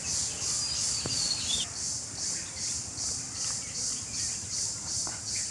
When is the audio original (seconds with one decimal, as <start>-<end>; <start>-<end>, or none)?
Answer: 0.0-3.3